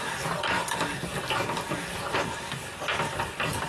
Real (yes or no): yes